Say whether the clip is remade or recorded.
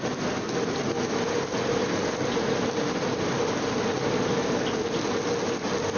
recorded